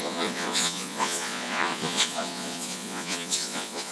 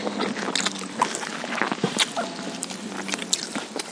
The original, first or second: second